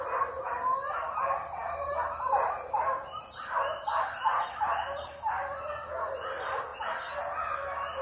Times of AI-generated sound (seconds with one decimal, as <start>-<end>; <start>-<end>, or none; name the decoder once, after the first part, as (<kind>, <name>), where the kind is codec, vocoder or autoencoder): none